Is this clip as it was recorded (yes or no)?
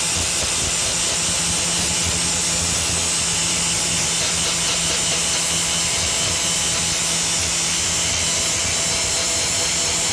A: yes